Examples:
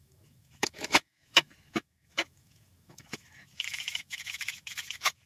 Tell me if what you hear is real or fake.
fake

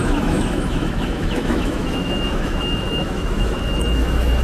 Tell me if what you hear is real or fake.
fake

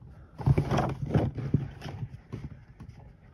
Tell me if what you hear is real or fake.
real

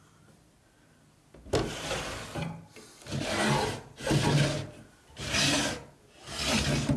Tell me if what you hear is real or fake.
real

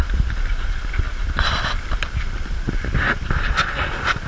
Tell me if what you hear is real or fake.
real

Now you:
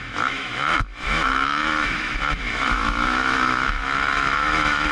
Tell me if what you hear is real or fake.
fake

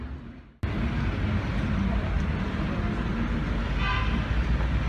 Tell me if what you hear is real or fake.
real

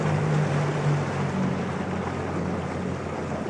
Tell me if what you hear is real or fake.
real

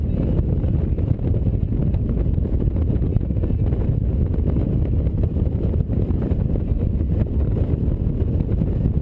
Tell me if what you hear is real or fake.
real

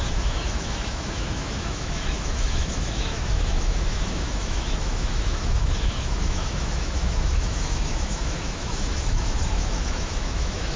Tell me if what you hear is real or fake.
fake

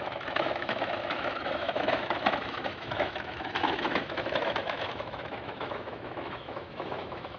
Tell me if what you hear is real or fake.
fake